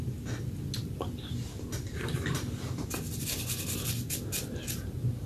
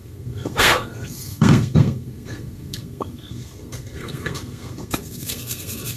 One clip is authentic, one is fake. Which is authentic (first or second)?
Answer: first